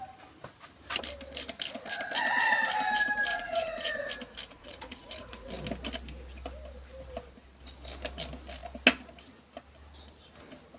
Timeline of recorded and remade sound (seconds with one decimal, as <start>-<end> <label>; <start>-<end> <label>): 0.0-3.3 recorded; 3.3-4.1 remade; 4.1-4.5 recorded; 4.5-5.5 remade; 5.5-10.8 recorded